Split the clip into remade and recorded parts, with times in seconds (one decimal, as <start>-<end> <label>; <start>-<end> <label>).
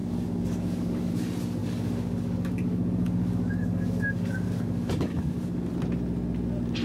0.0-1.1 remade; 1.1-1.6 recorded; 1.6-5.7 remade; 5.7-6.8 recorded